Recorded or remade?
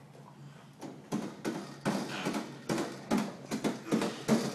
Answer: recorded